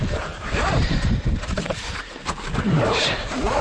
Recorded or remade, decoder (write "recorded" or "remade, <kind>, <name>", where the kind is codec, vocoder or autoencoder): remade, vocoder, BigVGAN v2